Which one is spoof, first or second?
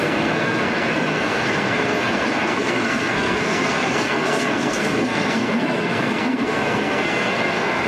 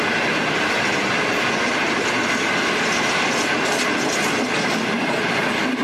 first